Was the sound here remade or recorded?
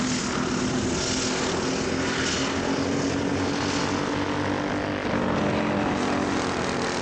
recorded